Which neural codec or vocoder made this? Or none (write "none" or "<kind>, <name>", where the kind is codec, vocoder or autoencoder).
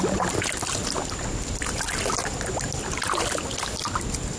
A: none